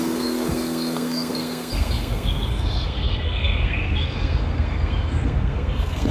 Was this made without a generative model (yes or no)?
no